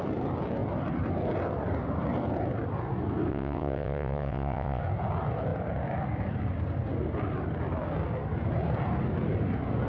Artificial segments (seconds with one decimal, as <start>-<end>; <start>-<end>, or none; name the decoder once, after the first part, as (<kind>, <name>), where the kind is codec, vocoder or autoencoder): 3.3-4.8 (vocoder, WaveNeXt)